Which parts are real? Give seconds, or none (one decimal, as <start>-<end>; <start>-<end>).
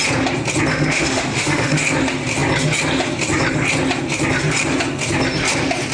0.0-0.7; 1.8-5.9